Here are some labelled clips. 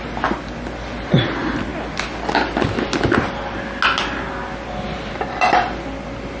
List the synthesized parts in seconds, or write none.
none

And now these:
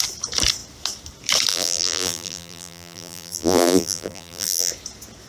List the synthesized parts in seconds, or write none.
1.5-4.7 (vocoder, BigVGAN v2)

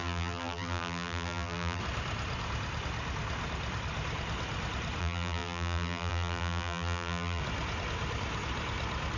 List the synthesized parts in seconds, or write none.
0.0-1.8 (vocoder, BigVGAN v2); 5.0-7.4

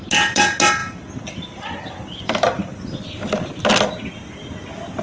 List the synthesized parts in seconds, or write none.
0.8-3.5 (vocoder, BigVGAN v2)